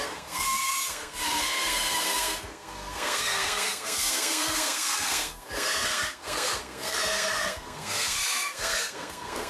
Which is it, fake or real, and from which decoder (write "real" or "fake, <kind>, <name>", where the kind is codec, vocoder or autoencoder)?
fake, codec, SNAC